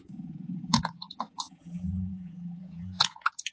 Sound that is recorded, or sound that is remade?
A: remade